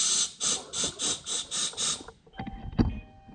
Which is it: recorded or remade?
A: recorded